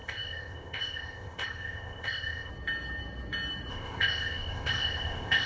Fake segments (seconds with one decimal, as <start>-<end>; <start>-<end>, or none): 0.0-2.5; 3.7-5.5